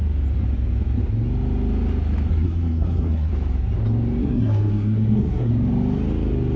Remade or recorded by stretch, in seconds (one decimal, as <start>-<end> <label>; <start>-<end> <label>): 0.0-2.3 recorded; 2.3-3.3 remade; 3.3-4.2 recorded; 4.2-5.5 remade; 5.5-6.6 recorded